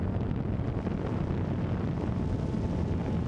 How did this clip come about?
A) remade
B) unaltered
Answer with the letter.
B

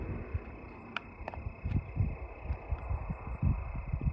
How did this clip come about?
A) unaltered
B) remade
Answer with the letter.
A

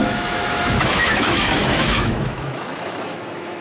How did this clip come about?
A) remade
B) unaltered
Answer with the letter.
A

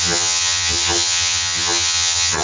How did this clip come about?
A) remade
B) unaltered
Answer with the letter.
A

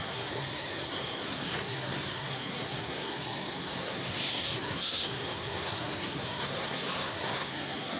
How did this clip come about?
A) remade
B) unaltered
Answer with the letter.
A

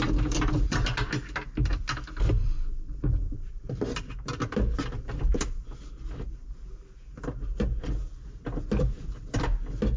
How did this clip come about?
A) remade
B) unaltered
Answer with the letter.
B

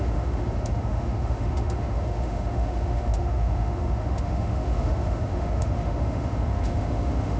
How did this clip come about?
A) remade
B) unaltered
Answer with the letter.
A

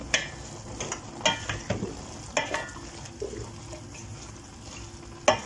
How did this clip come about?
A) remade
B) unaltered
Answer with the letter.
B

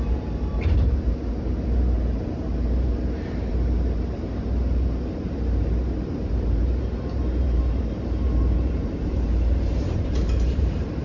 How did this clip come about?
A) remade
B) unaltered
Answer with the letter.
A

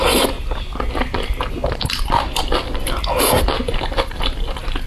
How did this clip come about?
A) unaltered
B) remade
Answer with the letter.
A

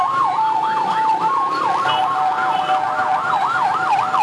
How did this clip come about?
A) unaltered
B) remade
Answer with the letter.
A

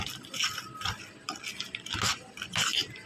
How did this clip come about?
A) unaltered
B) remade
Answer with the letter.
A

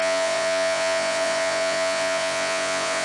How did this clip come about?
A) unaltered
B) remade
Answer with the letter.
B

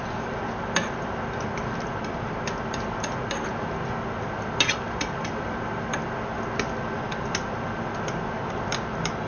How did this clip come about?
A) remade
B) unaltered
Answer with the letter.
B